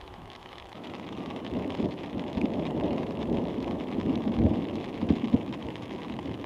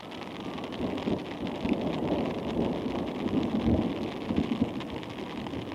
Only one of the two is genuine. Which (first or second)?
second